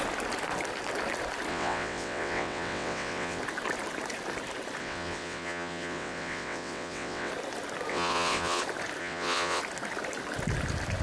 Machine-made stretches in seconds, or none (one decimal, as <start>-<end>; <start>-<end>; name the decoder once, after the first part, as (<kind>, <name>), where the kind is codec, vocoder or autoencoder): 1.5-3.4 (vocoder, WaveNeXt); 4.8-7.3; 7.9-8.6; 9.0-9.6